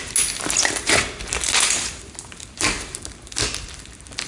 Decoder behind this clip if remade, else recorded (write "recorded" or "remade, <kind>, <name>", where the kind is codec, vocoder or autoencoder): recorded